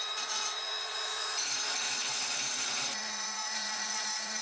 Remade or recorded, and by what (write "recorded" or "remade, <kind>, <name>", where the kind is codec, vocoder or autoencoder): remade, vocoder, Vocos